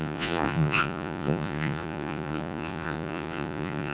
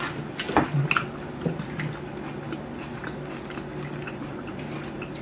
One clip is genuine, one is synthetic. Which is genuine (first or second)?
second